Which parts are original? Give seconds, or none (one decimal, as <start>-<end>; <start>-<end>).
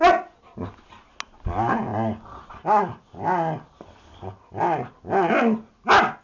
0.0-6.2